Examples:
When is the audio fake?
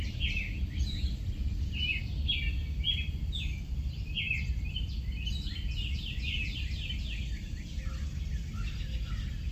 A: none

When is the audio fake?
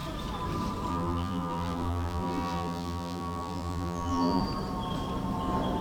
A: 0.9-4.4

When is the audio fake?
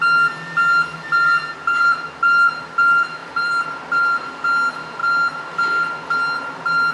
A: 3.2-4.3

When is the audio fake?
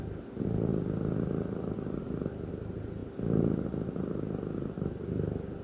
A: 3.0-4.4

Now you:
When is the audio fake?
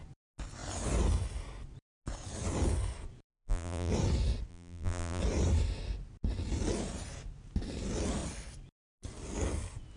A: 3.3-3.9; 4.5-5.2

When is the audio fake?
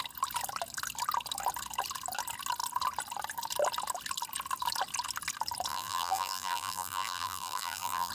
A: 5.7-8.1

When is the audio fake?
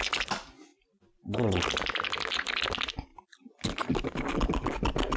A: 0.7-2.6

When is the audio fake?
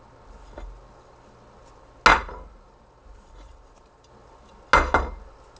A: 2.1-4.1